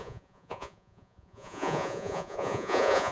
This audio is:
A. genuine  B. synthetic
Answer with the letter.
B